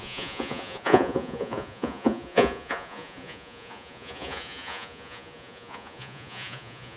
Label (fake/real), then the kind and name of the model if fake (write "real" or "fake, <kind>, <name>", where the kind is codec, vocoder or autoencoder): fake, vocoder, Vocos